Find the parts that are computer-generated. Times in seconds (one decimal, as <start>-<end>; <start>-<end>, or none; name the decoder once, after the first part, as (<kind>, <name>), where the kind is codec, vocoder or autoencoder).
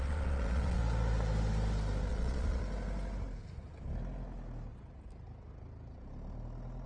0.0-0.8 (vocoder, Vocos); 2.1-2.6